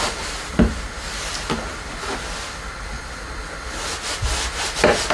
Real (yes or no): yes